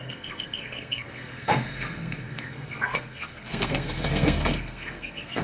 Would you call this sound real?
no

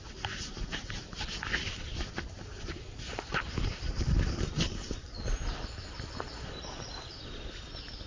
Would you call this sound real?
no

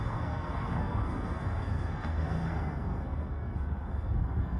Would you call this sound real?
no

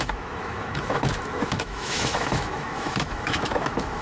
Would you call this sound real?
no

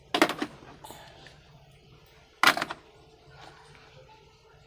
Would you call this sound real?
yes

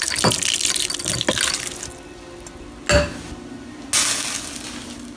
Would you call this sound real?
yes